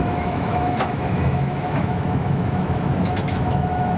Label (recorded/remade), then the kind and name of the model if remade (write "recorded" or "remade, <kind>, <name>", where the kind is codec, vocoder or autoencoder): remade, autoencoder, DAC-VAE